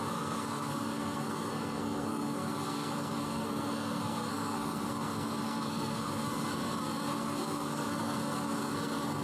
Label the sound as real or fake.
fake